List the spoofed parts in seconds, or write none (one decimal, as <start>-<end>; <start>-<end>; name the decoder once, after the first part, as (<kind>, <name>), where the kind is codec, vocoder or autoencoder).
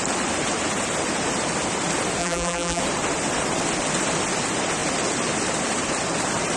2.2-2.8 (vocoder, BigVGAN v2)